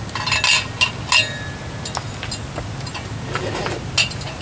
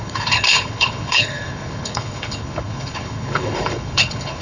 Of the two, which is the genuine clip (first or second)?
first